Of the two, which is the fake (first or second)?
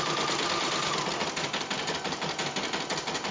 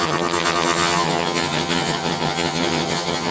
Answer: second